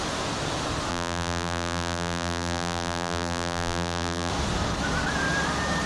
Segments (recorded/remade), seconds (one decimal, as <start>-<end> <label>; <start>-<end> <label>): 0.0-0.9 recorded; 0.9-4.3 remade; 4.3-5.9 recorded